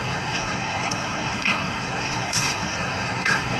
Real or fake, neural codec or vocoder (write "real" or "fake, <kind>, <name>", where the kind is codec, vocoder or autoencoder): fake, codec, SNAC